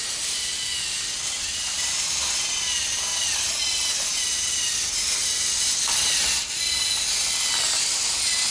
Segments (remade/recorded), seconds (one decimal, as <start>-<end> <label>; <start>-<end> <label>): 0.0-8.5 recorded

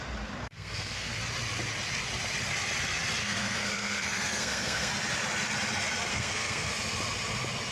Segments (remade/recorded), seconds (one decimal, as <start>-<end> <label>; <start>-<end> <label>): 0.0-0.4 recorded; 0.4-1.2 remade; 1.2-3.2 recorded; 3.2-4.9 remade; 4.9-6.1 recorded; 6.1-6.7 remade; 6.7-7.7 recorded

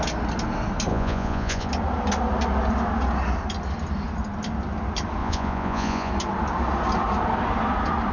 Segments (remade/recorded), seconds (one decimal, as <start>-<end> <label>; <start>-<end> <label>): 0.0-0.9 recorded; 0.9-1.7 remade; 1.7-5.2 recorded; 5.2-6.1 remade; 6.1-8.1 recorded

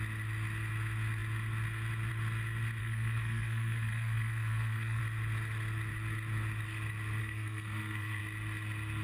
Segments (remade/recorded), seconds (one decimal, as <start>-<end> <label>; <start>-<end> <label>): 0.0-2.8 recorded; 2.8-5.0 remade; 5.0-7.2 recorded; 7.2-8.2 remade; 8.2-9.0 recorded

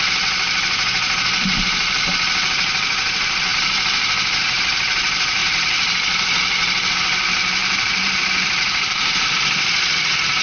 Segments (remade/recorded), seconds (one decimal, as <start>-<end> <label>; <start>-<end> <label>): 0.0-7.6 recorded; 7.6-9.4 remade; 9.4-10.4 recorded